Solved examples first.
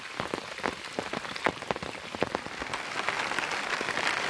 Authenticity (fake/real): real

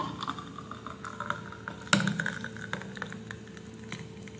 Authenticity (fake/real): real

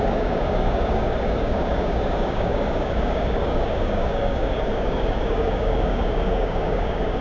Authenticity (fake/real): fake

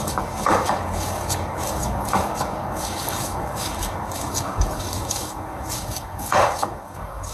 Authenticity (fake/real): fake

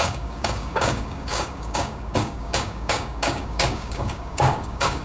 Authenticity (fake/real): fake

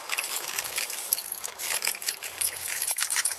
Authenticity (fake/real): fake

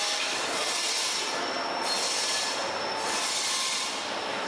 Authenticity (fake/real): real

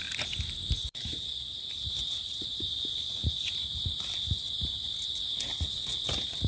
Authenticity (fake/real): real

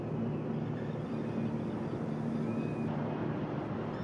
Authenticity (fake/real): real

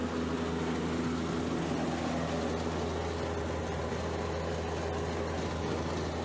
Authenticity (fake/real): real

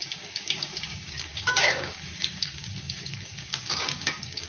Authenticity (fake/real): fake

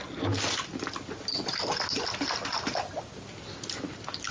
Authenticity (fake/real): real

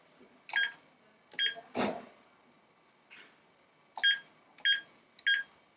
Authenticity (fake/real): real